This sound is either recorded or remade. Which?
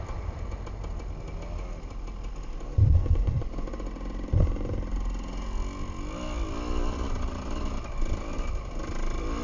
recorded